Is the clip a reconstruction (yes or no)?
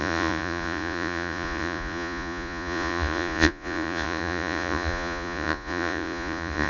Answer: yes